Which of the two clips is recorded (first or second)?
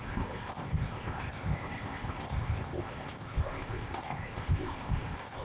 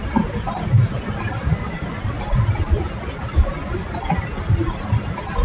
second